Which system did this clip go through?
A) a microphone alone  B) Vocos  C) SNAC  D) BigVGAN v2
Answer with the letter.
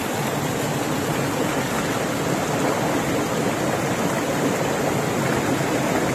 A